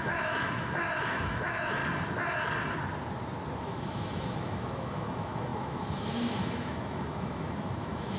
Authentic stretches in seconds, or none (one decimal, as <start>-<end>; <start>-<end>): 1.8-3.6